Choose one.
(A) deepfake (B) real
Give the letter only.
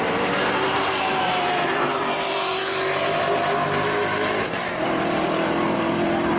A